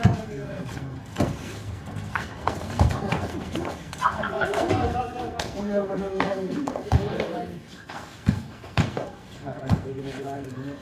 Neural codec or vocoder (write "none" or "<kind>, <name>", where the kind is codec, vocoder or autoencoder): codec, SNAC